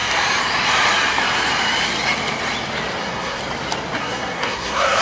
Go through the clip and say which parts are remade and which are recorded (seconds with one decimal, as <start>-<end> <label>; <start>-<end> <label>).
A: 0.0-3.0 recorded; 3.0-3.4 remade; 3.4-4.0 recorded; 4.0-5.0 remade